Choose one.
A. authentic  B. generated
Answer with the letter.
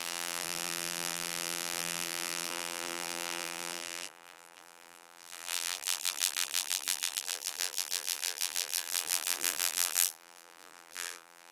B